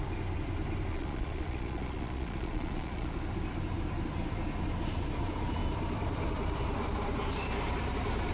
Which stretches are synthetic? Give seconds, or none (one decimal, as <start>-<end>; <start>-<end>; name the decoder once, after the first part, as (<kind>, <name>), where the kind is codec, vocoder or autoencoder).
0.9-3.1 (vocoder, Vocos)